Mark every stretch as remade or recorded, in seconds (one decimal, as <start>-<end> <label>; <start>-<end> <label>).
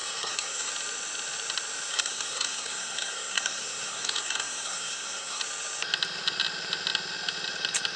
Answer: 0.0-0.7 remade; 0.7-1.9 recorded; 1.9-5.4 remade; 5.4-8.0 recorded